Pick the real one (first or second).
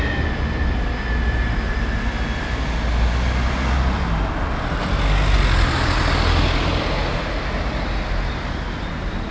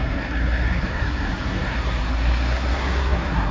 first